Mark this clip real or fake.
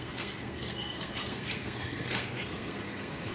fake